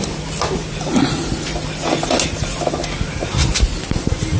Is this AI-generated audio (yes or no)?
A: no